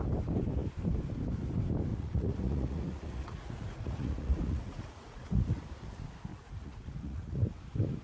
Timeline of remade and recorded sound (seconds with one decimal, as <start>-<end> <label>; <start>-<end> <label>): 0.0-1.9 recorded; 1.9-5.8 remade; 5.8-6.3 recorded; 6.3-7.5 remade; 7.5-8.0 recorded